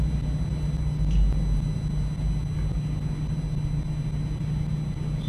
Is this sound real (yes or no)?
yes